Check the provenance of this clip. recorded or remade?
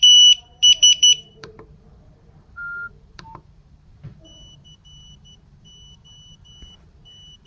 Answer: remade